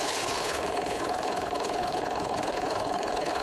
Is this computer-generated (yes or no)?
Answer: yes